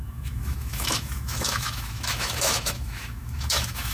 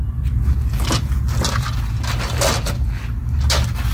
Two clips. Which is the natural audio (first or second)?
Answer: second